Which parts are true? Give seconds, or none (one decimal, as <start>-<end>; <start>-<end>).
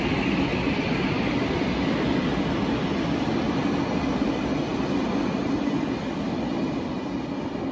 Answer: 0.0-7.7